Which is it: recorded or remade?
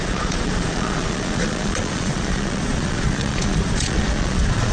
remade